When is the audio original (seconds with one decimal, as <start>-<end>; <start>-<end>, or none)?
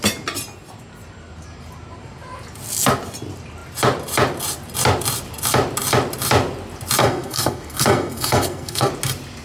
0.0-7.0; 8.9-9.4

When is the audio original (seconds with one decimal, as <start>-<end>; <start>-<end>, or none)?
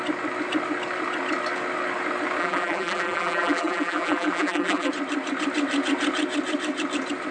0.0-2.4; 4.9-7.3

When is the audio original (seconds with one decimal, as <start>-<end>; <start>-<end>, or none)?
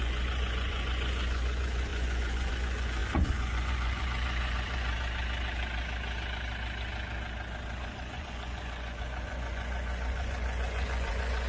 4.9-7.8